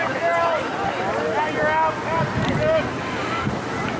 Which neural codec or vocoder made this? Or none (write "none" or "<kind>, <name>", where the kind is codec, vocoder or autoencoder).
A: none